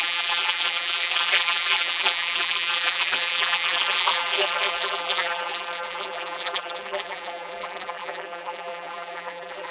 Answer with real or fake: fake